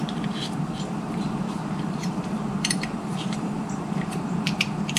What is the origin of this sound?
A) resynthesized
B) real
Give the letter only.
A